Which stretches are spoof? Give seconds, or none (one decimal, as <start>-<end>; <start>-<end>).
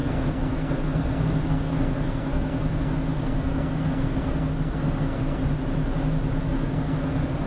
0.0-5.4; 6.4-7.5